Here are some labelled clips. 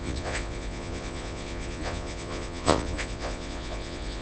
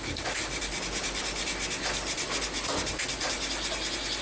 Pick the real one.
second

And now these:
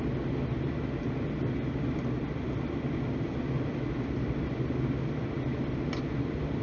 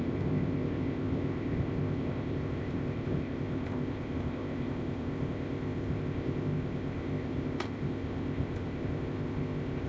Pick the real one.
first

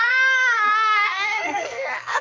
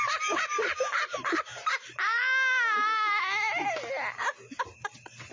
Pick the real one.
second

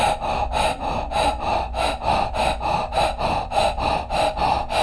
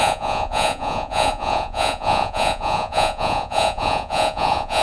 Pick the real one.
first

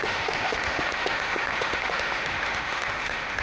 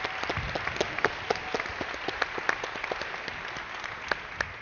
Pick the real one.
second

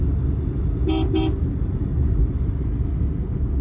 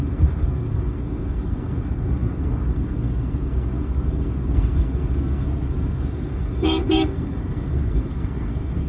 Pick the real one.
first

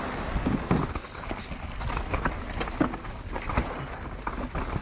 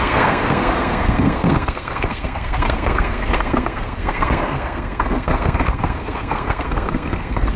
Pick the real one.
first